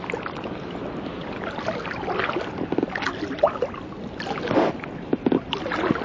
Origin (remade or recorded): recorded